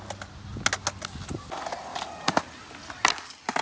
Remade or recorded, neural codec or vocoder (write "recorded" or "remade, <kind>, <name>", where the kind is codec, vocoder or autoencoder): recorded